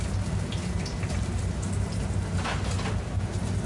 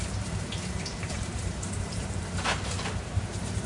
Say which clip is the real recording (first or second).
first